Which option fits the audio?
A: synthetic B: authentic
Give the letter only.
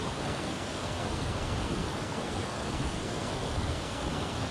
A